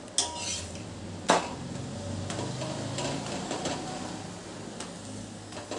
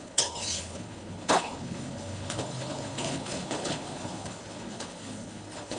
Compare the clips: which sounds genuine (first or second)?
first